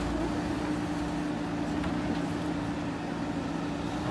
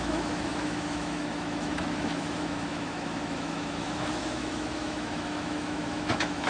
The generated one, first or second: second